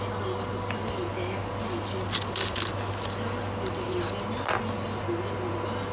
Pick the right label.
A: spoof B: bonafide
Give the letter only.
B